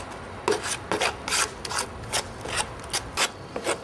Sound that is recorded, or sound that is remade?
recorded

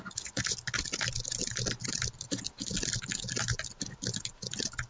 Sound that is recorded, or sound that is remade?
recorded